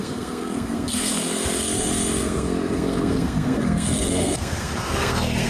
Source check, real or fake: fake